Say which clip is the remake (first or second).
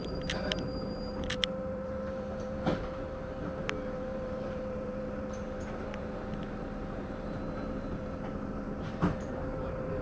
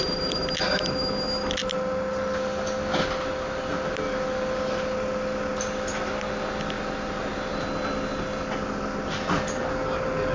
first